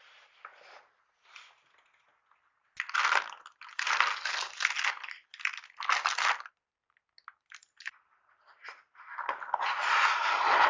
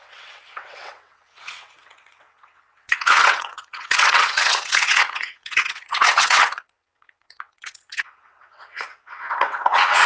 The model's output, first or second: second